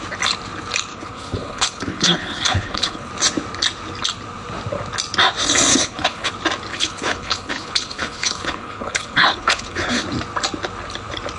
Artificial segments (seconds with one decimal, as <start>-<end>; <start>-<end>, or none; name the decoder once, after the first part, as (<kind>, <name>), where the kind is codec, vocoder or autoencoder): 0.9-3.1 (codec, HILCodec); 5.7-6.3; 6.7-10.0